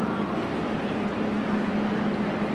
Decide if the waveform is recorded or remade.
recorded